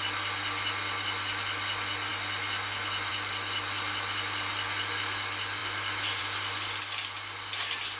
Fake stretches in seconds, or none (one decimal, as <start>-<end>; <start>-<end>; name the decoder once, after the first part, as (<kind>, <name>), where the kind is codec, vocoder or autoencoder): none